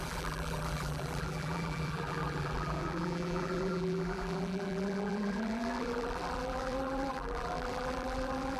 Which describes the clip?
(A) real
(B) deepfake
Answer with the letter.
B